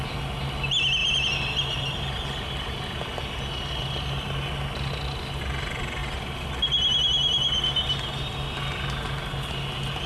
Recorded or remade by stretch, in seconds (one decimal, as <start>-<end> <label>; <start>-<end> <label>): 0.0-10.1 recorded